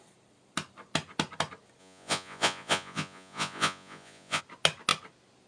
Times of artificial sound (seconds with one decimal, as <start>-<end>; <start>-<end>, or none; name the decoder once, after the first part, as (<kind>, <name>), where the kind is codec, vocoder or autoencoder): 1.8-4.4 (vocoder, Vocos)

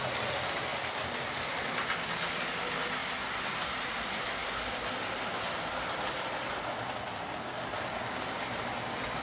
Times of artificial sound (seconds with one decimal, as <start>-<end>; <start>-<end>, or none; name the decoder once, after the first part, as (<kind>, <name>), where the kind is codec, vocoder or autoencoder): none

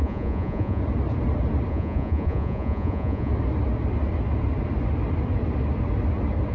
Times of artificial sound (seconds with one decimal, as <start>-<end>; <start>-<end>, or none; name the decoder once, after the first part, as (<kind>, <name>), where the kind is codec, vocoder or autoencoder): 0.0-0.8 (vocoder, Vocos); 1.7-3.3

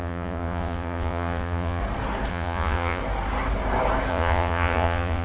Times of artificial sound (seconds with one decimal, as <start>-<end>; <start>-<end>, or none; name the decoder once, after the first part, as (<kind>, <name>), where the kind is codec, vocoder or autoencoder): 0.0-1.8 (vocoder, Vocos); 2.3-3.0; 4.1-5.2

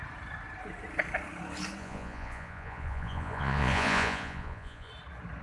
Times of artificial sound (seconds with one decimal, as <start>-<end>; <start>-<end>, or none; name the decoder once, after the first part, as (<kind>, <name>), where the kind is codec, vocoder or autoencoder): 1.8-4.9 (vocoder, Vocos)

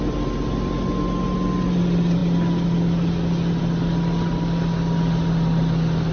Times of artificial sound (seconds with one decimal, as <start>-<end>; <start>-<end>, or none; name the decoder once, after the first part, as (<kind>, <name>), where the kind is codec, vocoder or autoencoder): none